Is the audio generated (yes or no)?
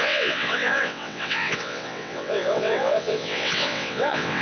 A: yes